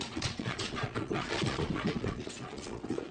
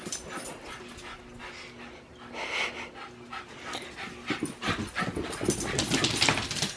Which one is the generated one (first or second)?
first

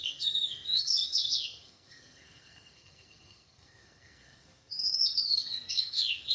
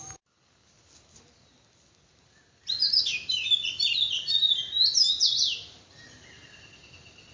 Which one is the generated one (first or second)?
first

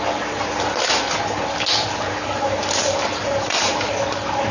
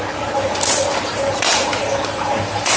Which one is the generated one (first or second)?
second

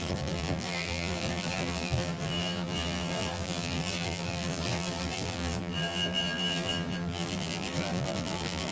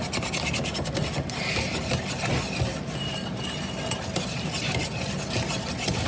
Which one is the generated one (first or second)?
first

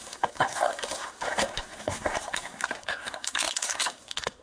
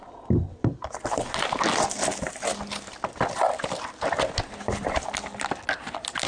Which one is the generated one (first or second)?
first